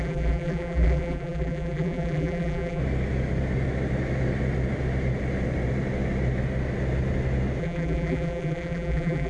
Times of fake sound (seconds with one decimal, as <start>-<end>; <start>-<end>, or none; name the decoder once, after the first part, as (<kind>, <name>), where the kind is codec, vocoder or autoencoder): 0.0-2.8 (vocoder, BigVGAN v2); 7.6-9.3